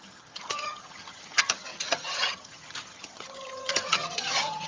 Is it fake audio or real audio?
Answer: fake